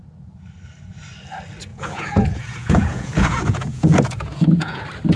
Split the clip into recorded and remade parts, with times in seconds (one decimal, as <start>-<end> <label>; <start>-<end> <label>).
0.0-1.7 recorded; 1.7-4.8 remade; 4.8-5.2 recorded

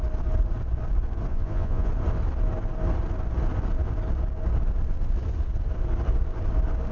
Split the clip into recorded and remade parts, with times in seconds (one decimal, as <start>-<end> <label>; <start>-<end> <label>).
0.0-1.3 recorded; 1.3-1.9 remade; 1.9-6.9 recorded

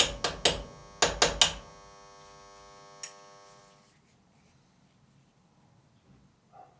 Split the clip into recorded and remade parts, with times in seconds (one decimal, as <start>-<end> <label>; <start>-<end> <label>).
0.0-6.8 recorded

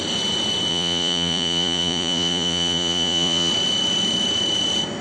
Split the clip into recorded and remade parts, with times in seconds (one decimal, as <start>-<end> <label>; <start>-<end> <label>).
0.0-0.7 recorded; 0.7-3.5 remade; 3.5-5.0 recorded

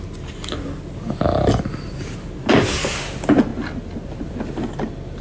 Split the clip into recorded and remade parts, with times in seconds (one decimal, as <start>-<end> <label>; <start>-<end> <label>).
0.0-5.2 recorded

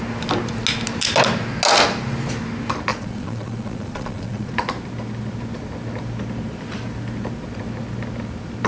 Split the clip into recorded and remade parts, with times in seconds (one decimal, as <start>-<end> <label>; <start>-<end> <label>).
0.0-2.9 recorded; 2.9-4.5 remade; 4.5-8.7 recorded

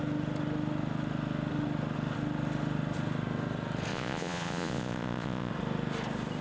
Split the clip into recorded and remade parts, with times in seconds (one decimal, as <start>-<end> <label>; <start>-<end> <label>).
0.0-3.9 recorded; 3.9-5.5 remade; 5.5-6.4 recorded

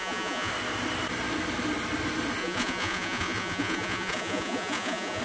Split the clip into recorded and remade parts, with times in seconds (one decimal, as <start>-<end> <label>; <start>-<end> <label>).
0.0-0.5 remade; 0.5-2.4 recorded; 2.4-5.2 remade